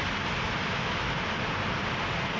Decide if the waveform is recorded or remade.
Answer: recorded